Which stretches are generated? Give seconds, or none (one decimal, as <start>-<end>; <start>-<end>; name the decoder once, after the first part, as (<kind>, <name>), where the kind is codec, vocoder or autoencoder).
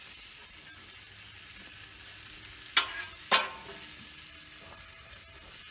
none